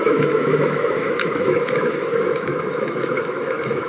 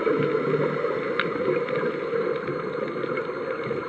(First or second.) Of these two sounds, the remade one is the first